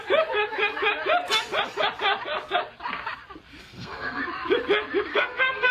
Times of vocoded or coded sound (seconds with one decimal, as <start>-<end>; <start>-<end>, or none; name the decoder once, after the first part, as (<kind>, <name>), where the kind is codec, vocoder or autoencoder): 3.6-4.2 (codec, SNAC); 5.1-5.7